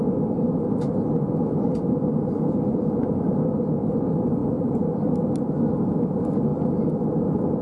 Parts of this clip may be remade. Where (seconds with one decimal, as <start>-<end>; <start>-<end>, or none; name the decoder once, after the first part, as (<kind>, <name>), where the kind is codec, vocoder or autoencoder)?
4.4-5.2 (vocoder, BigVGAN v2)